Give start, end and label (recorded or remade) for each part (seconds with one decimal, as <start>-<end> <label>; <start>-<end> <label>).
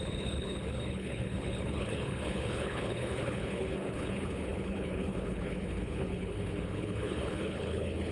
0.0-8.1 remade